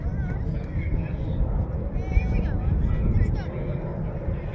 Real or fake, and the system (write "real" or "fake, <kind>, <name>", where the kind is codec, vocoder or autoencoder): real